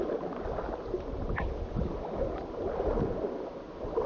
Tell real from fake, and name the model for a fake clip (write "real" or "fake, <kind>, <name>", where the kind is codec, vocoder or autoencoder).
real